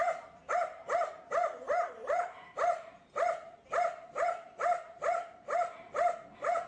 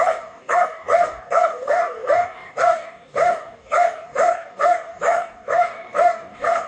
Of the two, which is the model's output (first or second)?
second